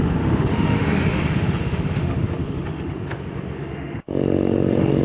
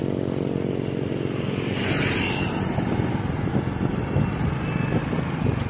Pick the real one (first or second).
second